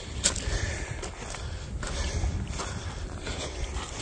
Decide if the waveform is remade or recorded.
recorded